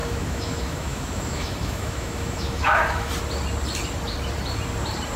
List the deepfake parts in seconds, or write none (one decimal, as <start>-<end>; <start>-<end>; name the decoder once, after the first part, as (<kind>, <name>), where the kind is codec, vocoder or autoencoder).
0.0-3.1 (autoencoder, DAC-VAE)